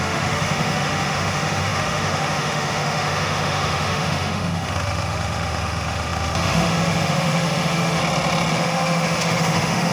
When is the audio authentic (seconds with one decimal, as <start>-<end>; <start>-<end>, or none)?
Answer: 8.0-8.5